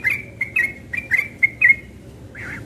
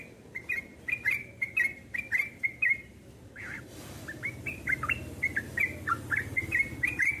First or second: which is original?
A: first